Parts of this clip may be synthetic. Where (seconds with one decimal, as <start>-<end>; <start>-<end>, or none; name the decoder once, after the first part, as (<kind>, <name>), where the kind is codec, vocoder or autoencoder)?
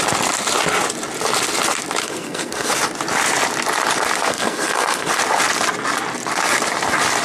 2.0-2.7 (codec, SNAC); 4.3-5.1